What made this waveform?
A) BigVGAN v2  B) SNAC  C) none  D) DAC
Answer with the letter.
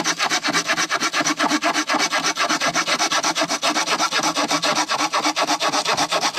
C